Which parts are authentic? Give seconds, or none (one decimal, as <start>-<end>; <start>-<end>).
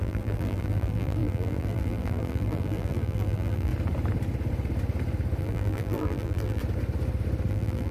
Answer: 3.7-5.4; 6.6-7.5